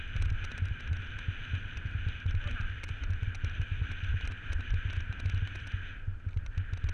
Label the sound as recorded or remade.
recorded